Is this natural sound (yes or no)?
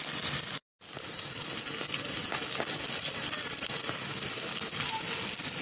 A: yes